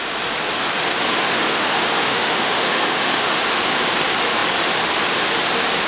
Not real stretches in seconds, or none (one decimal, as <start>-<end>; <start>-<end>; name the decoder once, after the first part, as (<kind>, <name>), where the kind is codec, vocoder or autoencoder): 1.1-3.4 (autoencoder, DAC-VAE)